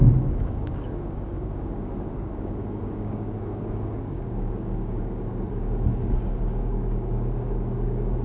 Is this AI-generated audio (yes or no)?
yes